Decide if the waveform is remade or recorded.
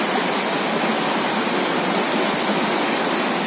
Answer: recorded